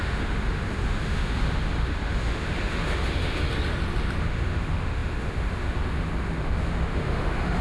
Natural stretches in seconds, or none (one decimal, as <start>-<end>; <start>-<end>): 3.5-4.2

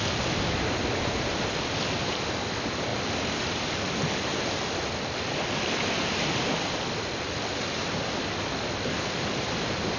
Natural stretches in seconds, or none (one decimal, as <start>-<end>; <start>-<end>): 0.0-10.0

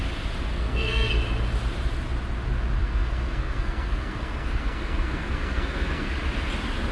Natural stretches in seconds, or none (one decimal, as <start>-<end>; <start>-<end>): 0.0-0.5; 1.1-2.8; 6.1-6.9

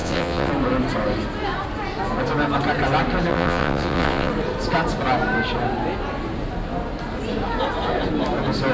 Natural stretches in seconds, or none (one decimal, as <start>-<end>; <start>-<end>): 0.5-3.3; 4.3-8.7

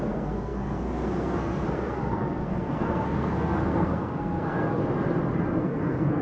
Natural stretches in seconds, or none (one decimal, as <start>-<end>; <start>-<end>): 4.8-5.6